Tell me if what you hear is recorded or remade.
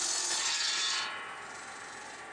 recorded